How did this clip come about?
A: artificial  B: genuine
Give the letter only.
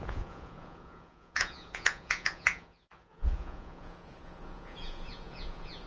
A